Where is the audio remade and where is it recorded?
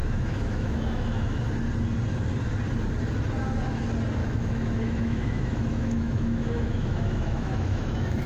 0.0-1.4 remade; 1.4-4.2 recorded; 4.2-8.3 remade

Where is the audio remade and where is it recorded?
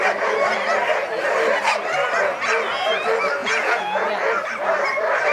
0.0-3.4 recorded; 3.4-4.1 remade; 4.1-5.3 recorded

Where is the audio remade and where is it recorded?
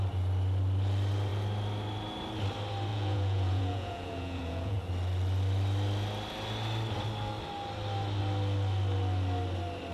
0.0-2.9 recorded; 2.9-4.9 remade; 4.9-9.9 recorded